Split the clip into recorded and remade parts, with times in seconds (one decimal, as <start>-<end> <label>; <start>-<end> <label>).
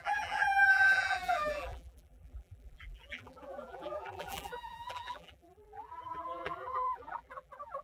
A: 0.0-7.8 remade